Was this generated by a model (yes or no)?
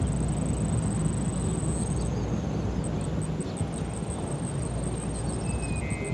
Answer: no